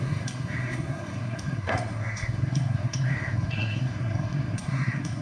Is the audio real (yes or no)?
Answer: no